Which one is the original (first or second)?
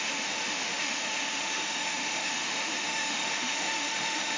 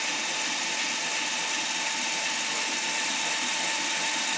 second